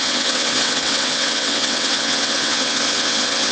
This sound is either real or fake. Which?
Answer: fake